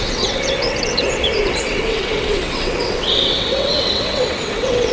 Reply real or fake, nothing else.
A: fake